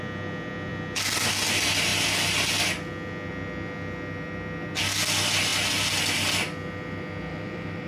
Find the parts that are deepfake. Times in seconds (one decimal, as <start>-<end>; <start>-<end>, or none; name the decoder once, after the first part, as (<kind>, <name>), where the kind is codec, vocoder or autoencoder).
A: 7.3-7.9 (vocoder, BigVGAN v2)